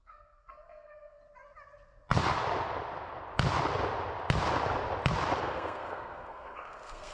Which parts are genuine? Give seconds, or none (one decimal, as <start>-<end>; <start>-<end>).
1.2-5.4